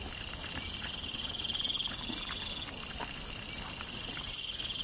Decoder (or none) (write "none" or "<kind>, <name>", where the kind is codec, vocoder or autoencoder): none